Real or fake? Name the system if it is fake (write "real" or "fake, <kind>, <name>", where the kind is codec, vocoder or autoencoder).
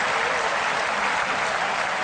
real